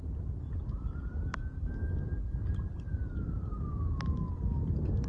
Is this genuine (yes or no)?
yes